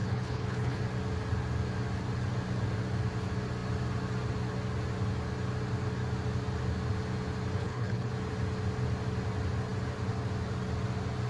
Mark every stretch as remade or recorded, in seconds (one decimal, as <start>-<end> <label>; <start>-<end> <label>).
0.0-0.8 remade; 0.8-7.6 recorded; 7.6-8.1 remade; 8.1-11.3 recorded